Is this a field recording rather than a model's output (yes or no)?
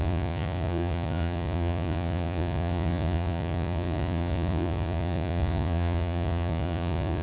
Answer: no